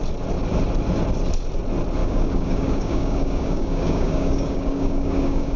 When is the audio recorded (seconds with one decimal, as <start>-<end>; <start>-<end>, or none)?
0.0-2.0